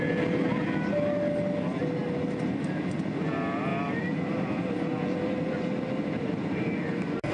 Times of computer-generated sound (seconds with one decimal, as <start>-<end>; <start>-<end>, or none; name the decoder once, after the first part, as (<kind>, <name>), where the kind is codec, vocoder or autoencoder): 2.0-2.7 (vocoder, BigVGAN v2); 3.7-7.3